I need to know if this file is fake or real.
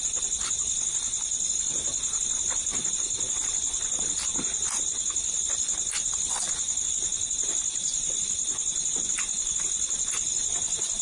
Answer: real